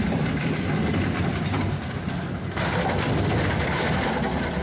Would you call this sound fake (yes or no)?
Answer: no